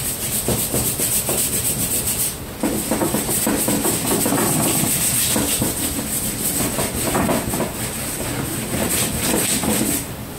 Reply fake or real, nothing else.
real